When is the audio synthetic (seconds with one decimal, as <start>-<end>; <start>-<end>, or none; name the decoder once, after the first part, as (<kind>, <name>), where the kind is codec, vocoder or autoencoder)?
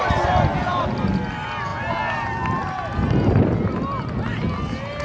none